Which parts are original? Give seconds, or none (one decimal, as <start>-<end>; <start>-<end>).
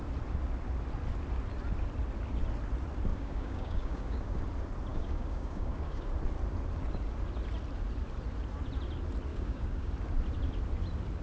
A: 0.0-3.1; 4.4-4.9; 6.1-9.3; 9.9-11.2